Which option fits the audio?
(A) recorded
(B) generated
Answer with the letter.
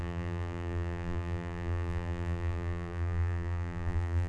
B